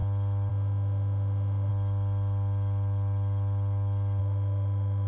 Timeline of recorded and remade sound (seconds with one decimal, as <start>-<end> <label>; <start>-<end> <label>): 0.0-0.5 recorded; 0.5-1.7 remade; 1.7-4.2 recorded; 4.2-5.1 remade